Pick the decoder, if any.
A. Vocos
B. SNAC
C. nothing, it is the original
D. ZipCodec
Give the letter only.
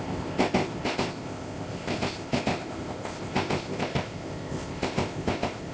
D